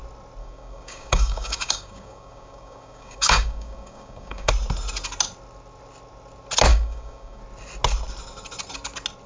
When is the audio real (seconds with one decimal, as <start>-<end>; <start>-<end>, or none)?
0.0-0.4; 4.5-6.7; 7.4-9.3